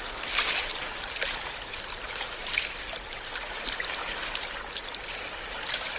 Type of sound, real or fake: real